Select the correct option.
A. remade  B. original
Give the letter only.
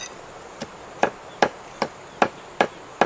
B